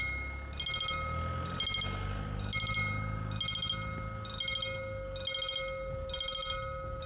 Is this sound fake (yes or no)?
no